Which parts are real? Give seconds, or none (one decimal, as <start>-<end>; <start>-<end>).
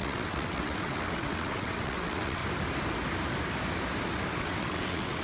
2.4-4.3